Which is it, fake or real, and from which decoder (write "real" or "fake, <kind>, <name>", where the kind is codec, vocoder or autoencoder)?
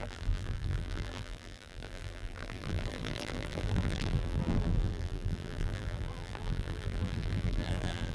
fake, vocoder, BigVGAN v2